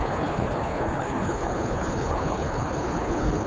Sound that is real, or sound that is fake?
fake